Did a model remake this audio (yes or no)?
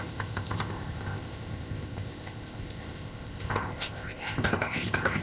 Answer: yes